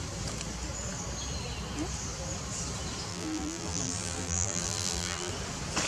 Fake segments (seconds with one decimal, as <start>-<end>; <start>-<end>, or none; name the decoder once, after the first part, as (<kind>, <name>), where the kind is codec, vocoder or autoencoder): 3.1-5.3 (vocoder, BigVGAN v2)